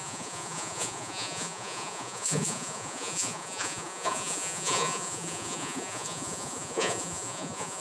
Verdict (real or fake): fake